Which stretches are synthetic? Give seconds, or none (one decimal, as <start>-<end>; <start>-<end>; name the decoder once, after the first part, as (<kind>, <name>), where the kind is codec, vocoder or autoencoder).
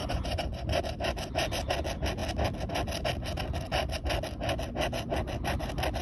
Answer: 0.0-0.8 (vocoder, Vocos)